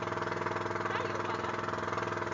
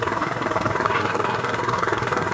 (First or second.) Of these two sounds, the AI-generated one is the second